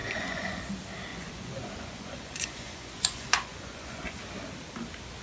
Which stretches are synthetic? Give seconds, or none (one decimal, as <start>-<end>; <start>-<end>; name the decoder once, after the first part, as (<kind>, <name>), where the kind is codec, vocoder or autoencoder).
0.0-0.6 (vocoder, Vocos); 1.1-4.2